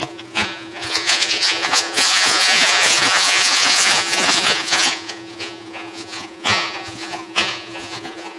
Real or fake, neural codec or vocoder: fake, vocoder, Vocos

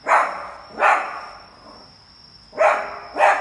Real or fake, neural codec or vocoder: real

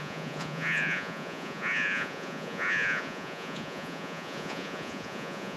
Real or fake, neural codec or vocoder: fake, vocoder, Vocos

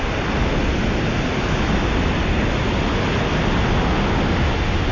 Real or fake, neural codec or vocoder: real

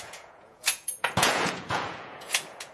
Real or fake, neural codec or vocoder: fake, vocoder, Vocos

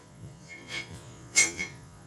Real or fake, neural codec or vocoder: fake, vocoder, Vocos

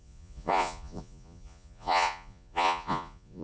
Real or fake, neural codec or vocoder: fake, vocoder, Vocos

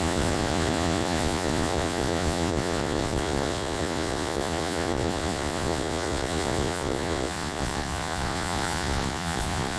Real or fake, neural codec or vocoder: fake, vocoder, Vocos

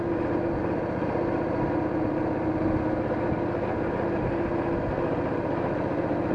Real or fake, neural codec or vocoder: real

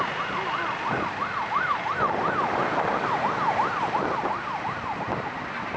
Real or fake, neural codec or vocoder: real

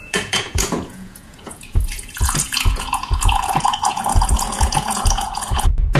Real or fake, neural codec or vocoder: fake, vocoder, Vocos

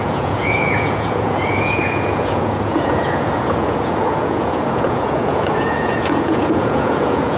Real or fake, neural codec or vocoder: fake, vocoder, Vocos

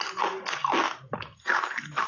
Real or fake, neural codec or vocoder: real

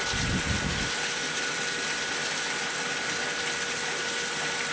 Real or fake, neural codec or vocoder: real